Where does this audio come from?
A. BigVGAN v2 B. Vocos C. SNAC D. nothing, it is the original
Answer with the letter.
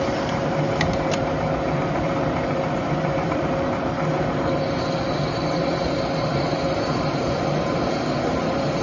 A